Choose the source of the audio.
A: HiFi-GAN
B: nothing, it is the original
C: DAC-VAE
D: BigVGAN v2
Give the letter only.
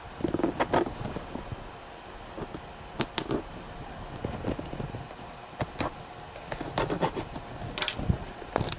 B